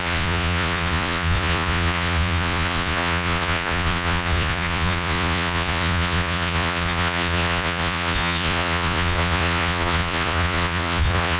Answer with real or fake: fake